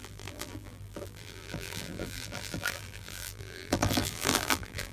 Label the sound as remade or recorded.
remade